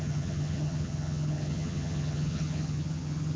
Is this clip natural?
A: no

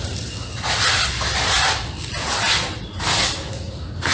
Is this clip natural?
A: yes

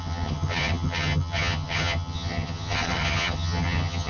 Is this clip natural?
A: no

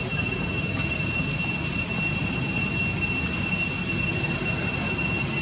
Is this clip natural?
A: yes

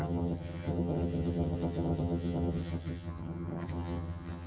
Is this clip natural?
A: no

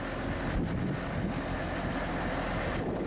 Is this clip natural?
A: yes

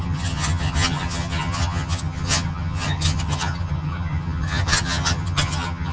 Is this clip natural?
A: no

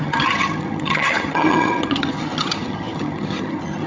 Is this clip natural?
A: no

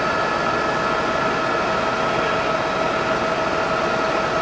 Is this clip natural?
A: yes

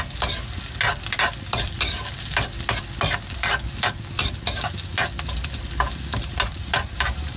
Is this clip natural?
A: yes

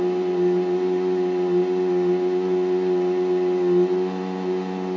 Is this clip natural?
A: yes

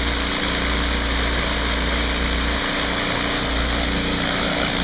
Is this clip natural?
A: yes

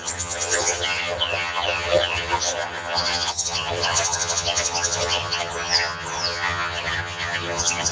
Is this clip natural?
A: no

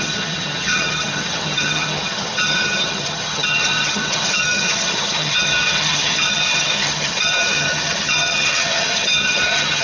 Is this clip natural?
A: no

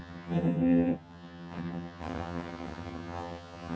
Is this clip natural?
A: no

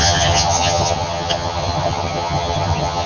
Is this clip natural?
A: no